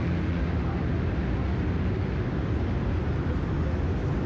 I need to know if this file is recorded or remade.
recorded